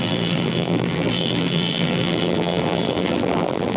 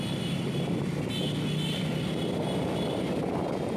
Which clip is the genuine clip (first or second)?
second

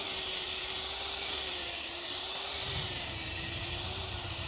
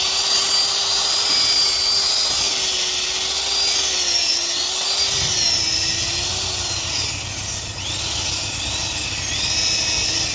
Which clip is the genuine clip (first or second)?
second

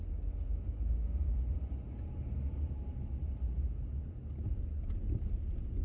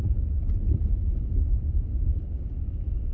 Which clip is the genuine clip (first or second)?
first